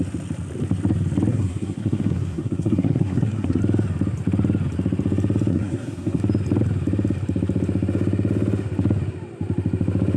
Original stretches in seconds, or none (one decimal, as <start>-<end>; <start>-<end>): 0.0-1.3; 3.6-5.5; 6.2-10.2